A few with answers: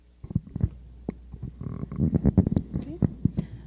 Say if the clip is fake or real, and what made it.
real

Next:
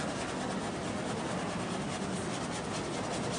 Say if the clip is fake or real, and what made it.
real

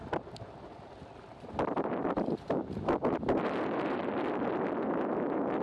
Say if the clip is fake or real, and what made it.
real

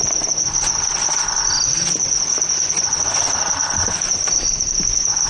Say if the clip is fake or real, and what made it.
real